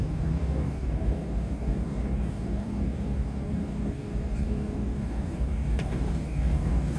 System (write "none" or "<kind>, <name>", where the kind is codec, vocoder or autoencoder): codec, DAC